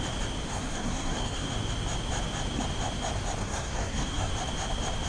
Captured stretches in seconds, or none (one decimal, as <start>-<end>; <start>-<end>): 0.0-0.5; 1.5-3.4; 4.3-5.1